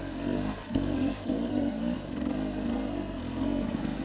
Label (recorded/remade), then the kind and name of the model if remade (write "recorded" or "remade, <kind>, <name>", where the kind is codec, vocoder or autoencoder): remade, codec, SNAC